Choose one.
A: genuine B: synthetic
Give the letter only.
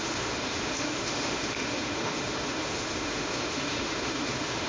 B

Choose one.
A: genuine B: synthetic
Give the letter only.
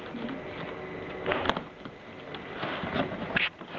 A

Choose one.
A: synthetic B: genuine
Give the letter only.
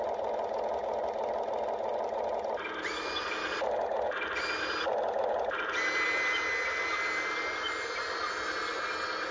B